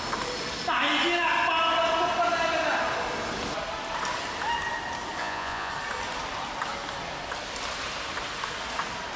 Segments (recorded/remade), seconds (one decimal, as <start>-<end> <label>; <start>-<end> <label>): 0.0-5.2 recorded; 5.2-5.7 remade; 5.7-9.2 recorded